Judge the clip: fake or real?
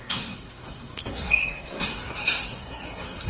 fake